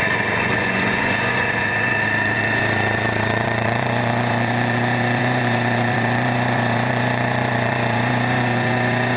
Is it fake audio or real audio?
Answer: fake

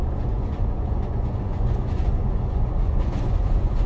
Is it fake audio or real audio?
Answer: fake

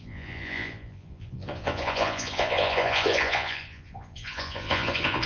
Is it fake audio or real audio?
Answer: fake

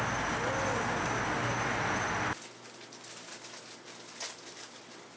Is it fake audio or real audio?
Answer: real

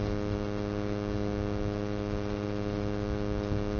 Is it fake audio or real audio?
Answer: real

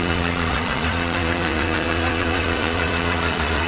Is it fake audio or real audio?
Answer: fake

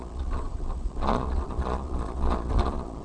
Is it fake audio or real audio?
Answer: fake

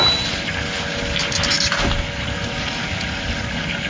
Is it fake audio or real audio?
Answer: real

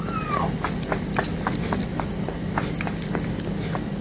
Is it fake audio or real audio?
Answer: real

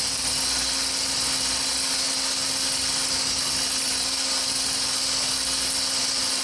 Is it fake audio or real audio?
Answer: real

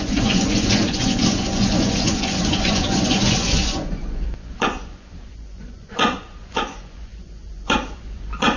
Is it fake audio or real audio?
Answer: fake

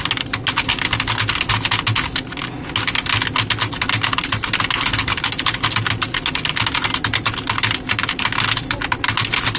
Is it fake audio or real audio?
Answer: real